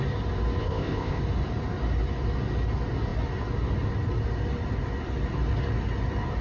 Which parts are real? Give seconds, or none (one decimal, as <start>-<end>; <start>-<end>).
0.0-0.6; 1.2-6.4

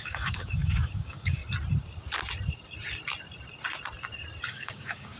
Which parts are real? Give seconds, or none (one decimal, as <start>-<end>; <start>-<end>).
1.4-4.5

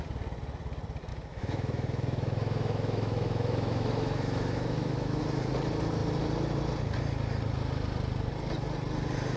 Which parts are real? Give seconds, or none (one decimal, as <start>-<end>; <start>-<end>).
0.0-1.1; 5.2-9.4

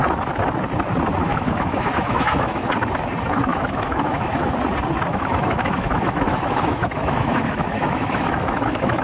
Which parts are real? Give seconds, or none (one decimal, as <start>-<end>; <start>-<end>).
0.0-1.3; 2.7-3.5; 4.5-5.1